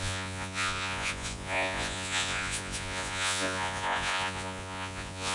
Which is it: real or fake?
fake